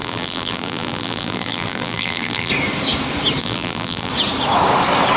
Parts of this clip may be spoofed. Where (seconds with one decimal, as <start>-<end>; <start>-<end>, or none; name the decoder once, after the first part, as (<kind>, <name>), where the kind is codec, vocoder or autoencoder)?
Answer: 0.0-2.5 (vocoder, BigVGAN v2); 3.4-4.1